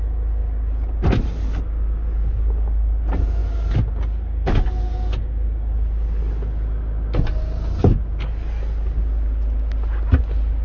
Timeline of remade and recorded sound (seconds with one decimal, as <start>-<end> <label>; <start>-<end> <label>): 0.0-10.6 recorded